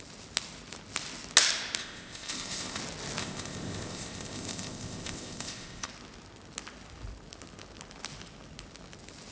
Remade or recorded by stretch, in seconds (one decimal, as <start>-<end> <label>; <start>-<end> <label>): 0.0-1.8 recorded; 1.8-2.8 remade; 2.8-3.2 recorded; 3.2-5.9 remade; 5.9-9.3 recorded